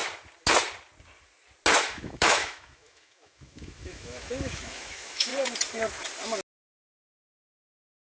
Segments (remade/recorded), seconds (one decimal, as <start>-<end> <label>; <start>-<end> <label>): 0.0-1.8 recorded; 1.8-5.3 remade; 5.3-6.6 recorded; 6.6-8.1 remade